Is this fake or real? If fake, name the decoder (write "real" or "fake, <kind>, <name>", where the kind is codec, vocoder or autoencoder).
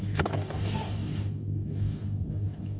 fake, codec, DAC